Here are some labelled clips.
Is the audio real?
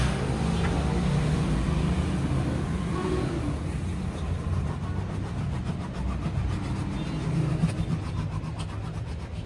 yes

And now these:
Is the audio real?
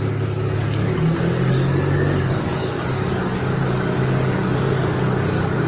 no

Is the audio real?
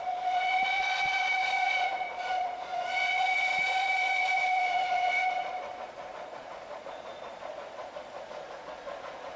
no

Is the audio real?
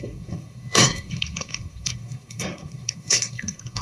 no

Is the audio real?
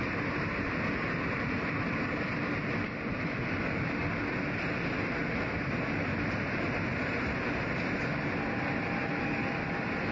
yes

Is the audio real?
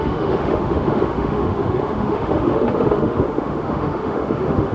no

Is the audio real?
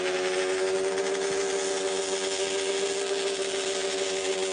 yes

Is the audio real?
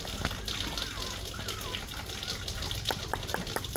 yes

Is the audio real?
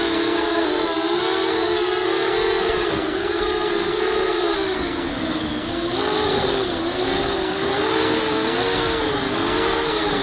no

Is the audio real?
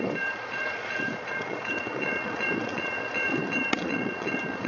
no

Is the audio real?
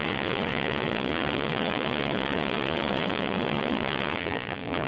no